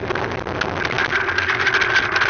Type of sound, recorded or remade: recorded